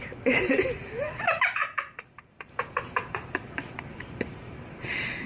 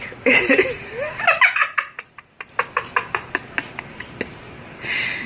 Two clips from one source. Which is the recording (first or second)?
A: second